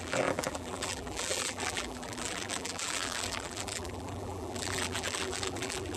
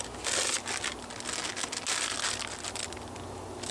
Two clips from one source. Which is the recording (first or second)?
second